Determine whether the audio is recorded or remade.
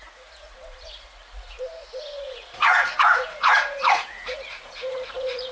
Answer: remade